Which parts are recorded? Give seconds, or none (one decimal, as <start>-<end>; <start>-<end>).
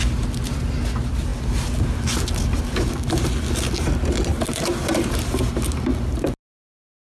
0.0-7.2